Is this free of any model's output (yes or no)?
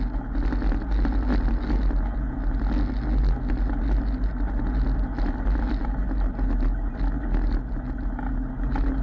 yes